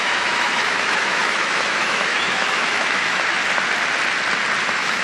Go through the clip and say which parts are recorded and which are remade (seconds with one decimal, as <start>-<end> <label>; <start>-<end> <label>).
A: 0.0-3.4 remade; 3.4-4.6 recorded; 4.6-5.0 remade